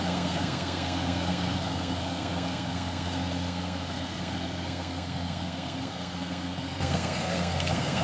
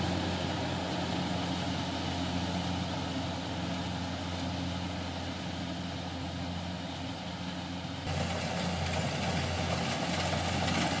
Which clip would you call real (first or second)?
second